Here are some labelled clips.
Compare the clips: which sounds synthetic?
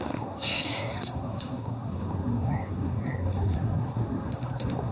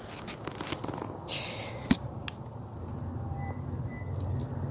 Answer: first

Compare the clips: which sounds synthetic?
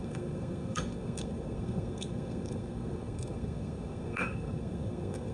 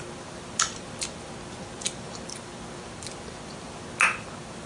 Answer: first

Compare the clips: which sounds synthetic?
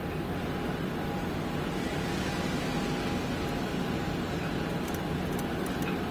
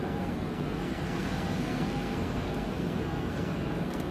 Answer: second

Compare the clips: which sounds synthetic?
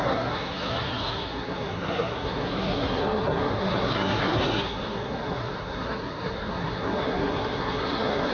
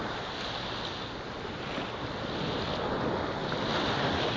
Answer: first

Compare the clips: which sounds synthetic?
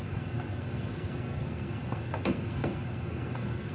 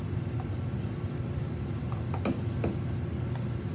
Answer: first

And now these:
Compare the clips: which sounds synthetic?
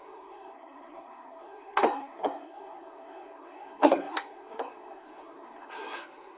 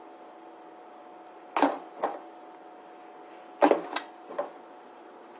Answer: first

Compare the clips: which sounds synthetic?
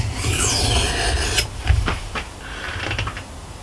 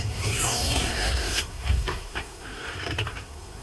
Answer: second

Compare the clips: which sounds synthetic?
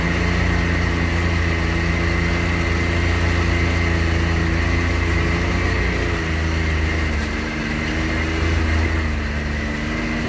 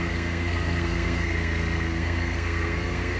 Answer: second